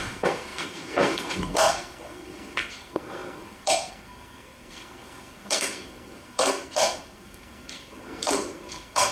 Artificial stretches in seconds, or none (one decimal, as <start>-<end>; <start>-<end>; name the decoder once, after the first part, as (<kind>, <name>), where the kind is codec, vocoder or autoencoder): 0.0-9.1 (codec, SNAC)